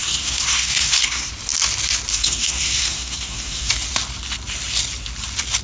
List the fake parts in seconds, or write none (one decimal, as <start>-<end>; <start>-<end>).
0.0-1.3; 2.1-3.7